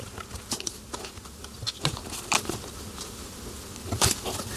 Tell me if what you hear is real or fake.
real